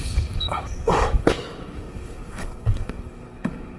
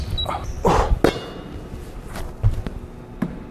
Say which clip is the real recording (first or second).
second